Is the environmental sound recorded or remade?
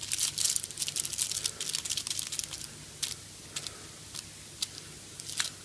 recorded